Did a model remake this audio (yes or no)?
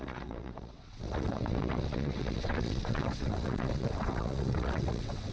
yes